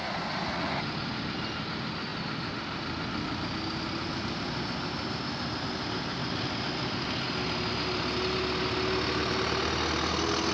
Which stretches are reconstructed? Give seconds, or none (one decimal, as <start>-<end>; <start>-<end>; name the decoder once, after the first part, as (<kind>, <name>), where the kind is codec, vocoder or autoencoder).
0.0-0.7 (vocoder, Vocos)